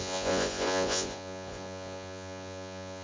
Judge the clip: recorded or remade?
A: remade